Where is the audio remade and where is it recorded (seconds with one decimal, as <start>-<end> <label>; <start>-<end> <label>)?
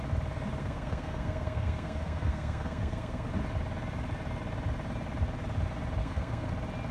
0.0-0.6 recorded; 0.6-3.3 remade; 3.3-6.0 recorded; 6.0-6.5 remade; 6.5-6.9 recorded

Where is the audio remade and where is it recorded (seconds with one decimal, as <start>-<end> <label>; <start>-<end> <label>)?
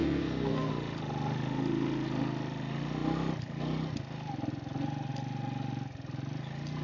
0.0-0.7 remade; 0.7-6.8 recorded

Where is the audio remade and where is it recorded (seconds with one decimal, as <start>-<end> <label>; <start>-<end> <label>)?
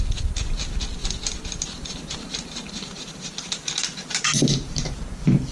0.0-2.8 recorded; 2.8-3.7 remade; 3.7-5.5 recorded